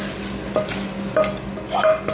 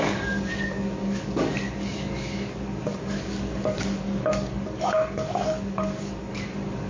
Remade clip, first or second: second